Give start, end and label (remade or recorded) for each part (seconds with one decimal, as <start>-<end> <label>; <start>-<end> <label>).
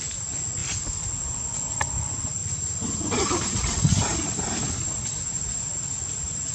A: 0.0-2.4 recorded; 2.4-5.2 remade; 5.2-6.5 recorded